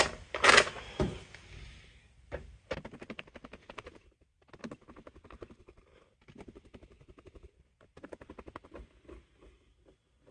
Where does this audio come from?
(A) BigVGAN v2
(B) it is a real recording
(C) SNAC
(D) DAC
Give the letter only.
B